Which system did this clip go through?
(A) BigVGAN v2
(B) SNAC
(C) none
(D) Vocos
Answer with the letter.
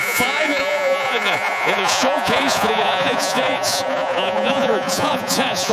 D